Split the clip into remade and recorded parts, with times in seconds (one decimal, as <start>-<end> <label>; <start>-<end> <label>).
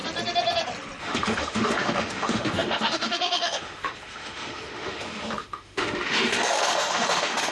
0.0-1.0 recorded; 1.0-7.5 remade